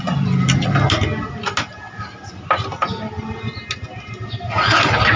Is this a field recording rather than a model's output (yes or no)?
yes